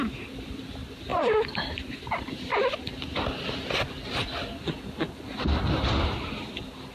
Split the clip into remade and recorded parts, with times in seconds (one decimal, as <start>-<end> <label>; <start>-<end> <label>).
0.0-6.9 recorded